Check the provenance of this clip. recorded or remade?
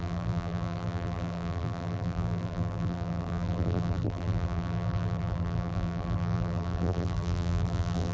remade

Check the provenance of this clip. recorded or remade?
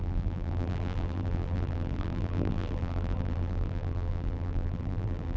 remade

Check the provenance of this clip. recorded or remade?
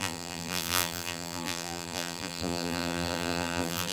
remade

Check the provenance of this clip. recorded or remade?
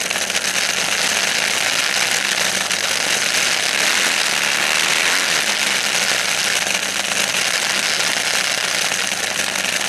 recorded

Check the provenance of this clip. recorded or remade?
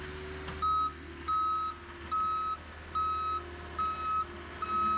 recorded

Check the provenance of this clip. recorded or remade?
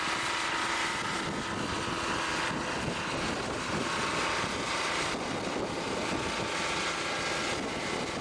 recorded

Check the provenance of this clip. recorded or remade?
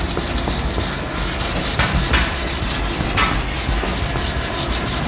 remade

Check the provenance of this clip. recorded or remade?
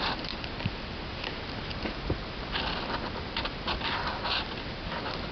recorded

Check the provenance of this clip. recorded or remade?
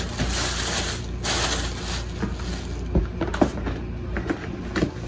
recorded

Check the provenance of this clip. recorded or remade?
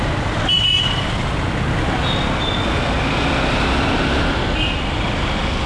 recorded